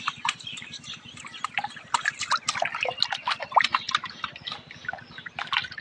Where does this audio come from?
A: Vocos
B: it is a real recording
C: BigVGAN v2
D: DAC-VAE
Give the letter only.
B